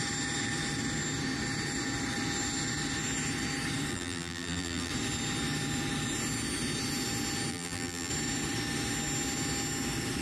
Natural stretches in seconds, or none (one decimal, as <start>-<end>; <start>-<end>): 0.0-3.9; 4.9-7.5; 8.1-10.2